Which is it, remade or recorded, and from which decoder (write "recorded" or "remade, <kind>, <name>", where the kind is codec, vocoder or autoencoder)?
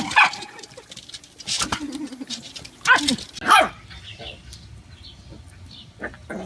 recorded